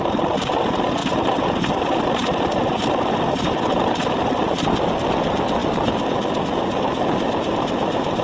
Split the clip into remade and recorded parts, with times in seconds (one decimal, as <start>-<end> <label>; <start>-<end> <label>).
0.0-8.2 recorded